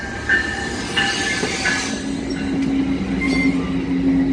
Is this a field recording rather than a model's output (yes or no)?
yes